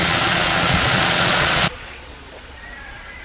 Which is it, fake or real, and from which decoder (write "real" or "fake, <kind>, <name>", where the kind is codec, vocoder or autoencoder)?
fake, vocoder, Vocos